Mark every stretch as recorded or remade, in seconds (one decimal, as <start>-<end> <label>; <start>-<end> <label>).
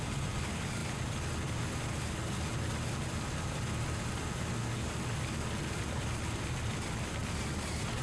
0.0-0.8 remade; 0.8-5.6 recorded; 5.6-8.0 remade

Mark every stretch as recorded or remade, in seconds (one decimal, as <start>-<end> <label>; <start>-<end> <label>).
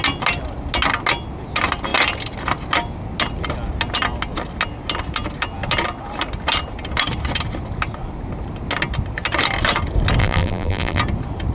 0.0-10.2 recorded; 10.2-11.0 remade; 11.0-11.5 recorded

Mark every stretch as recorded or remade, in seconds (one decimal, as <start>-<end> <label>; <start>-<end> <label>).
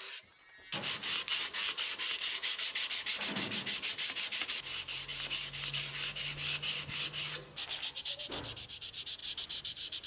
0.0-9.2 recorded; 9.2-10.1 remade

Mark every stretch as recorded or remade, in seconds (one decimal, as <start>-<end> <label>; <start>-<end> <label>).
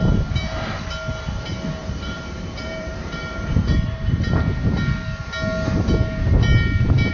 0.0-1.8 recorded; 1.8-4.4 remade; 4.4-7.1 recorded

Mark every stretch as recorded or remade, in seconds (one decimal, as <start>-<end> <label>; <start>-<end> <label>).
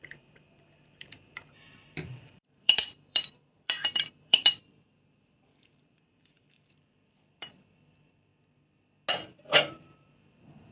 0.0-8.3 remade; 8.3-9.7 recorded; 9.7-10.7 remade